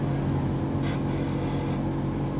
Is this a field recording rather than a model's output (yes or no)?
yes